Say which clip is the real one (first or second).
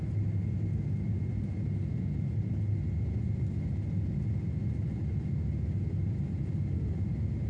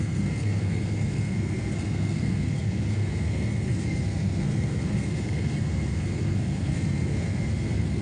first